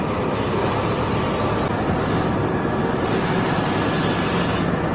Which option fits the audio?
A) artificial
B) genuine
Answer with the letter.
B